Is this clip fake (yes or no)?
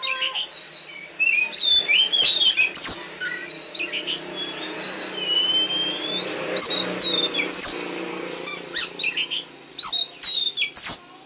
no